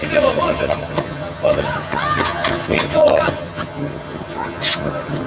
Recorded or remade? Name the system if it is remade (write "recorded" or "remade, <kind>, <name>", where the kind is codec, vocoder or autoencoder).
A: remade, vocoder, HiFi-GAN